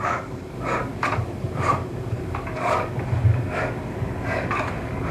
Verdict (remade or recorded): remade